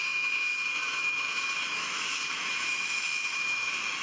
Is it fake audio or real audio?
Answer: fake